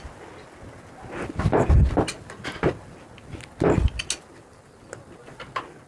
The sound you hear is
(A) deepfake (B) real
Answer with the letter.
B